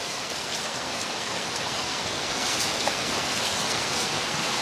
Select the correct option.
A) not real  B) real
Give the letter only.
A